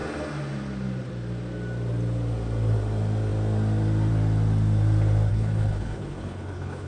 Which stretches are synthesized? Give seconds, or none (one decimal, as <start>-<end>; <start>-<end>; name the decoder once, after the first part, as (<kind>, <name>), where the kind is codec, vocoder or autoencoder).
5.3-6.9 (codec, HILCodec)